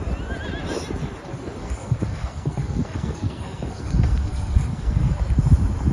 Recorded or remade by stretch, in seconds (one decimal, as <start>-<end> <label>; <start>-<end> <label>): 0.0-1.6 recorded; 1.6-5.1 remade; 5.1-5.9 recorded